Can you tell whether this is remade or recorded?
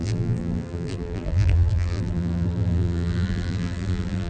remade